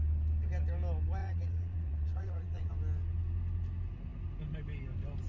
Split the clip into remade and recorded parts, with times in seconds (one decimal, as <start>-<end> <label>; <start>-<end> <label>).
0.0-1.2 recorded; 1.2-2.7 remade; 2.7-5.3 recorded